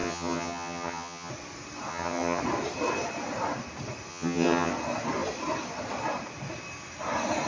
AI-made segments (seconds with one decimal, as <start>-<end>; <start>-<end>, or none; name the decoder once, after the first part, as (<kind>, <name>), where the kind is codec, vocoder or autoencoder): 0.0-1.3 (vocoder, HiFi-GAN); 1.9-2.4; 4.1-4.7